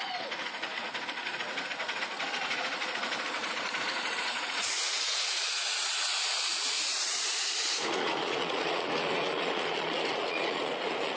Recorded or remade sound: remade